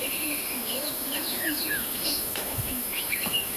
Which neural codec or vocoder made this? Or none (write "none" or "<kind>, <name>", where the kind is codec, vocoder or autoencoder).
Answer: autoencoder, DAC-VAE